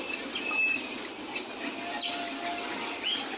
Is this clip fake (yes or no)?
no